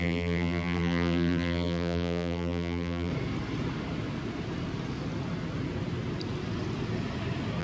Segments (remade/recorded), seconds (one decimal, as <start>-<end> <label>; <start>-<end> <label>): 0.0-3.1 remade; 3.1-7.6 recorded